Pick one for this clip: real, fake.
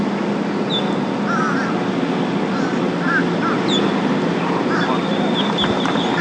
real